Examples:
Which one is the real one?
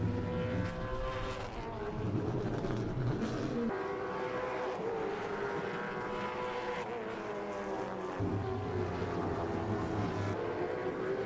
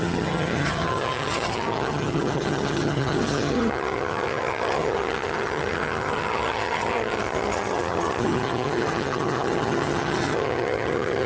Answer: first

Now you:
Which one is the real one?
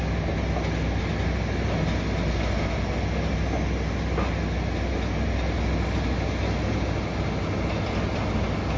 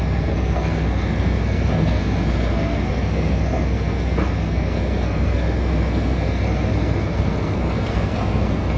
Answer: first